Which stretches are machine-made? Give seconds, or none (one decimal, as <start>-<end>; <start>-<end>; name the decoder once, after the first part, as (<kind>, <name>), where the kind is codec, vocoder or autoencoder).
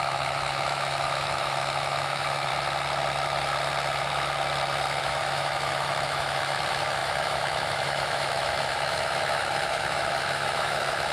0.0-2.5 (autoencoder, DAC-VAE); 5.0-11.1